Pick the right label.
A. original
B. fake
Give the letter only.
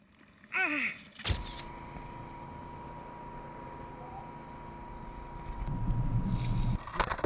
A